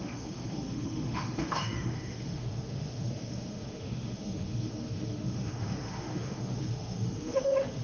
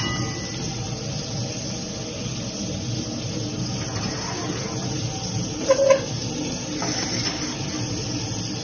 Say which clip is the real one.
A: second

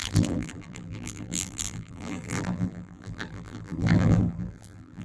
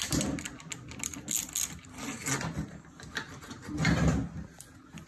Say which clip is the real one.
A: second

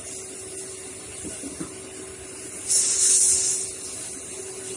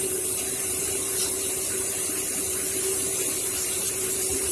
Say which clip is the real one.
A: first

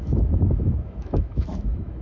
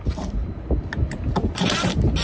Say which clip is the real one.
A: second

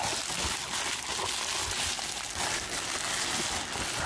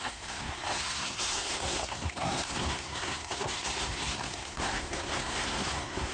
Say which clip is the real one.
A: first